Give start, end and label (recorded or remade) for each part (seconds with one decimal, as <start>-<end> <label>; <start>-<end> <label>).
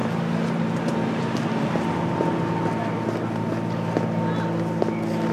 0.0-5.3 recorded